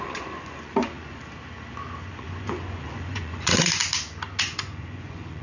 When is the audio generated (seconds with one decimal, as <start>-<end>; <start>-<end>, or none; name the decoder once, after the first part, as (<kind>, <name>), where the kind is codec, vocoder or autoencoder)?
0.0-1.2 (vocoder, Vocos); 2.1-3.8; 4.4-5.4